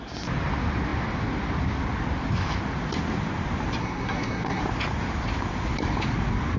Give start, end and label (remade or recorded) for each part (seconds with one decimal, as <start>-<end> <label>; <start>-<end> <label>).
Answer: 0.0-3.8 recorded; 3.8-4.6 remade; 4.6-6.6 recorded